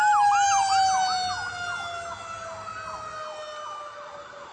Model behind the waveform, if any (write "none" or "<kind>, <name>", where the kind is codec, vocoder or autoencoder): none